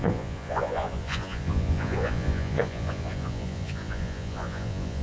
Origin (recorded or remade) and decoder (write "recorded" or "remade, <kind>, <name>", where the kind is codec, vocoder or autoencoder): remade, vocoder, Vocos